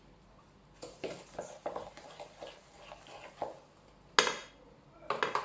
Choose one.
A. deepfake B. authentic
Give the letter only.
B